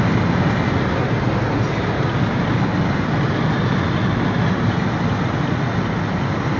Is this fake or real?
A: real